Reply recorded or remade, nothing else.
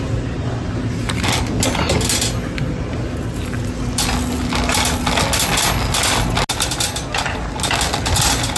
recorded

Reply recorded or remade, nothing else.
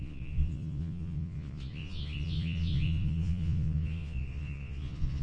remade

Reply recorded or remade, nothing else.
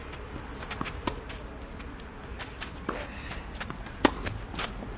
recorded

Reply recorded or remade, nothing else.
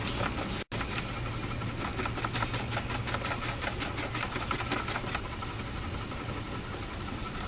recorded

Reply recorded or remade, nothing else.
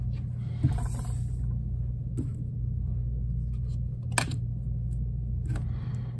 recorded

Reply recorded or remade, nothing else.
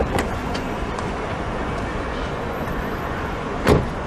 remade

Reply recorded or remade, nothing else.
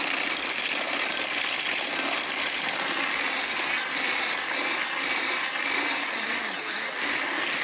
recorded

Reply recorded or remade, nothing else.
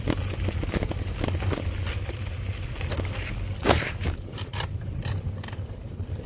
recorded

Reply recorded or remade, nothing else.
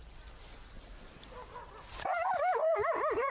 recorded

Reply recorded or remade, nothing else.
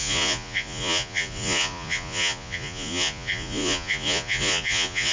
remade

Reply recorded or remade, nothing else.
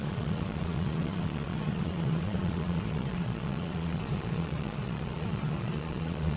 remade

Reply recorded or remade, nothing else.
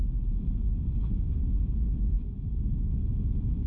recorded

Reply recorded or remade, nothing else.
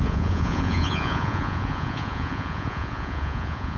remade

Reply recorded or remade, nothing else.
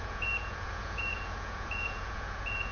remade